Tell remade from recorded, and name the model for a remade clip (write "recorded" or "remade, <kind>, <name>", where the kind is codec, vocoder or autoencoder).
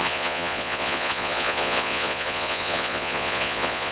remade, vocoder, Vocos